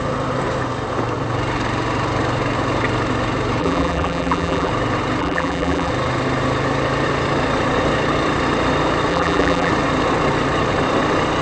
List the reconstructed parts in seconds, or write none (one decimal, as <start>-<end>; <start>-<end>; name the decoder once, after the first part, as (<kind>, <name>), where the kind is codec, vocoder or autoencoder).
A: 3.6-4.7 (vocoder, BigVGAN v2); 5.2-5.9; 9.1-9.7